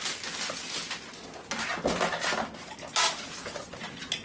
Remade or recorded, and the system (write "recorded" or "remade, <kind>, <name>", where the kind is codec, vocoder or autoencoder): recorded